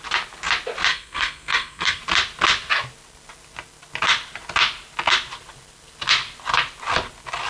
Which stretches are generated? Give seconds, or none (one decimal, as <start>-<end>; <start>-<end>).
0.9-2.0